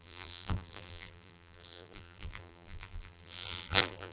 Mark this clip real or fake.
fake